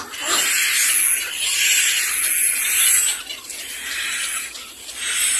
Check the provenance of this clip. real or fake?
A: real